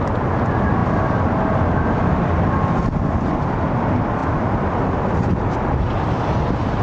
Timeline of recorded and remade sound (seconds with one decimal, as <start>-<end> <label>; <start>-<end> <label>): 0.0-6.8 recorded